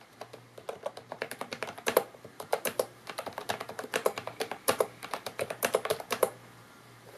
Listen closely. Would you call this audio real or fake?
fake